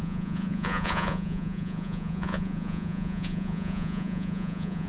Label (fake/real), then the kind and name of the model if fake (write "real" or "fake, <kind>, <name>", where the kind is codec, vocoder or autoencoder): fake, vocoder, Vocos